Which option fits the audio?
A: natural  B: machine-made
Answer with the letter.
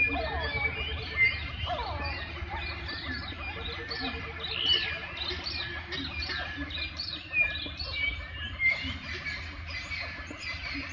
A